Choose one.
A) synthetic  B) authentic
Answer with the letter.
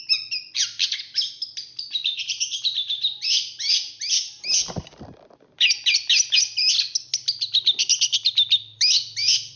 B